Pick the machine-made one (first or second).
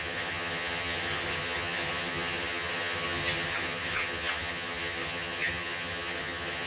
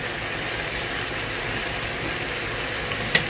first